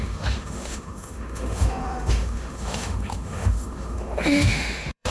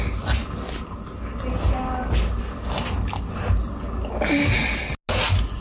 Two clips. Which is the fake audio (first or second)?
first